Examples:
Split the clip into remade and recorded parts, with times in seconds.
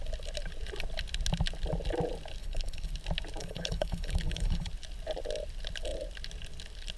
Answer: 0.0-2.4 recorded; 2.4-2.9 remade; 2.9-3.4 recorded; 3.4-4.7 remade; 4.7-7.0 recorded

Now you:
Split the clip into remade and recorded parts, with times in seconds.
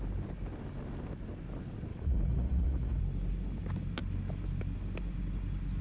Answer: 0.0-1.9 recorded; 1.9-3.0 remade; 3.0-5.8 recorded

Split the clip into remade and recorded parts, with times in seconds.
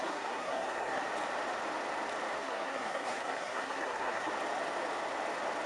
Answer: 0.0-1.0 remade; 1.0-2.4 recorded; 2.4-4.3 remade; 4.3-5.7 recorded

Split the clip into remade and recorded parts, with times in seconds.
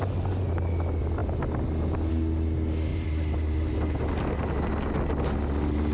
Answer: 0.0-2.9 recorded; 2.9-4.0 remade; 4.0-5.9 recorded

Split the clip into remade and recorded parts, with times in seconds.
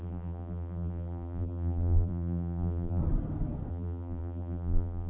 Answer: 0.0-3.0 remade; 3.0-3.7 recorded; 3.7-5.1 remade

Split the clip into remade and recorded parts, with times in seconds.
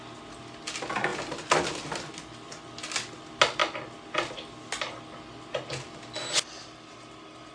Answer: 0.0-7.5 recorded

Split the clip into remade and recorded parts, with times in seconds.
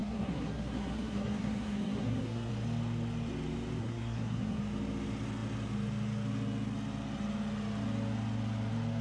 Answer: 0.0-2.5 remade; 2.5-3.8 recorded; 3.8-4.6 remade; 4.6-9.0 recorded